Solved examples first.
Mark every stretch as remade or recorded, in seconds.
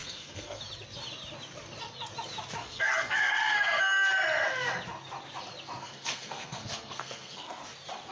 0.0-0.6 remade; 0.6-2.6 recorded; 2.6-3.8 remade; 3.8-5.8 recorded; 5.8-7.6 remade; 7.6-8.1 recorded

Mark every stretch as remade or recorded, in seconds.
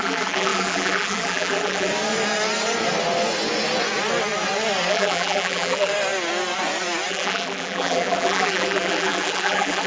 0.0-1.9 remade; 1.9-4.9 recorded; 4.9-5.9 remade; 5.9-7.1 recorded; 7.1-9.9 remade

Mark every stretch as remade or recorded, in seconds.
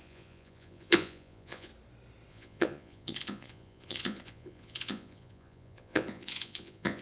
0.0-1.7 remade; 1.7-2.3 recorded; 2.3-7.0 remade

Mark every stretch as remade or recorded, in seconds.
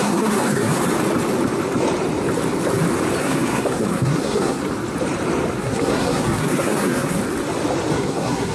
0.0-0.8 remade; 0.8-3.2 recorded; 3.2-4.6 remade; 4.6-5.6 recorded; 5.6-7.2 remade; 7.2-7.9 recorded; 7.9-8.5 remade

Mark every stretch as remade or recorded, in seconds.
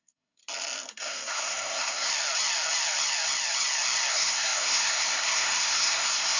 0.0-0.4 remade; 0.4-0.9 recorded; 0.9-2.1 remade; 2.1-4.1 recorded; 4.1-6.4 remade